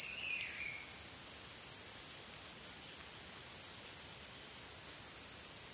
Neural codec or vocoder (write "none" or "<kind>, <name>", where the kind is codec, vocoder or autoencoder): none